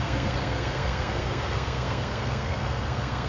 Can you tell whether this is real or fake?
fake